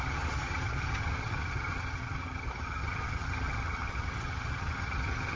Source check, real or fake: fake